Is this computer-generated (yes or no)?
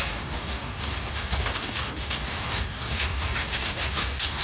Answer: yes